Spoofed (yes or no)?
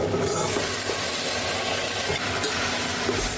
no